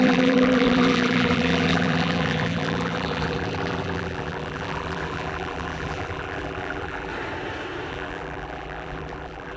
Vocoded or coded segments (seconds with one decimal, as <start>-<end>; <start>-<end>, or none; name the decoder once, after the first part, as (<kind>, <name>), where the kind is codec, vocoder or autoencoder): 0.0-7.1 (vocoder, BigVGAN v2); 7.9-9.6